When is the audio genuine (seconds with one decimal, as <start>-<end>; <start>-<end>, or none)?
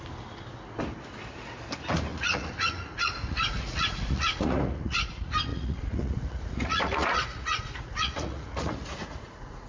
0.0-2.1; 5.1-5.5